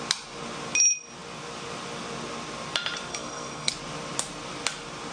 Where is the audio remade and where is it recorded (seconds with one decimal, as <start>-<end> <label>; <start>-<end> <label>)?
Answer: 0.0-3.1 recorded; 3.1-3.7 remade; 3.7-5.1 recorded